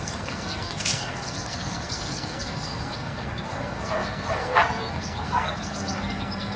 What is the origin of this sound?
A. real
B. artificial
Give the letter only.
B